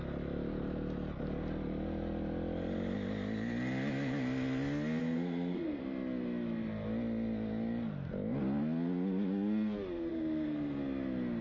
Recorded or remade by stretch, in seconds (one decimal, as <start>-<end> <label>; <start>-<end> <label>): 0.0-5.0 recorded; 5.0-5.8 remade; 5.8-10.1 recorded; 10.1-10.8 remade; 10.8-11.4 recorded